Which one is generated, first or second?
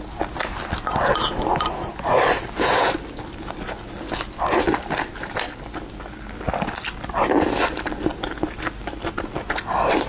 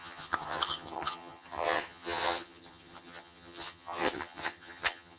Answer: second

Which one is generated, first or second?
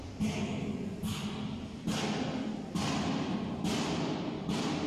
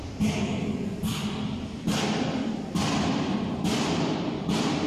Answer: second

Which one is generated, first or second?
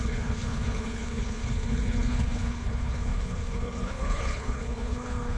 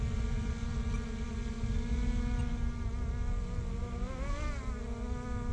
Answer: first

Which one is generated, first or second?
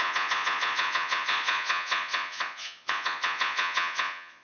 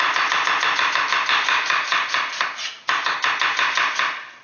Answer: first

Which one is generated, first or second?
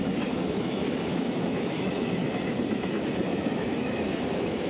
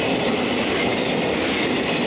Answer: first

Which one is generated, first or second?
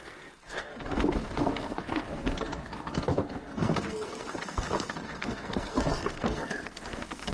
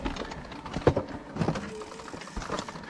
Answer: first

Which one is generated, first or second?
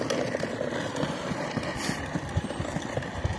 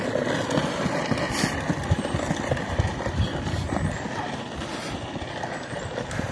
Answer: first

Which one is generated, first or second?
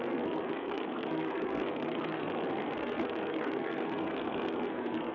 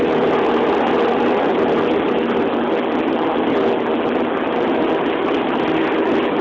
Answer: first